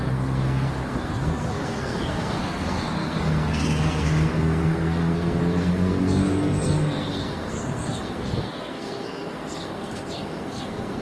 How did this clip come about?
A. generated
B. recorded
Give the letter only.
A